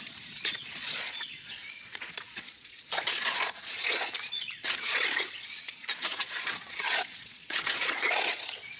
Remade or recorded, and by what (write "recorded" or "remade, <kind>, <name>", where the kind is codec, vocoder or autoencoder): remade, vocoder, Vocos